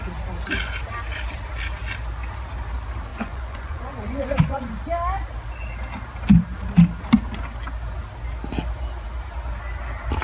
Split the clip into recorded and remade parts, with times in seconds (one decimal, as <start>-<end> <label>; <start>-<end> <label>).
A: 0.0-3.1 recorded; 3.1-4.7 remade; 4.7-10.2 recorded